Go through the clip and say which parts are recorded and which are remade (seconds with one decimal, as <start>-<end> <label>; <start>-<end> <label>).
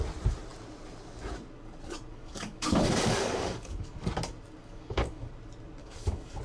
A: 0.0-2.1 recorded; 2.1-4.1 remade; 4.1-4.6 recorded; 4.6-5.3 remade; 5.3-5.8 recorded; 5.8-6.4 remade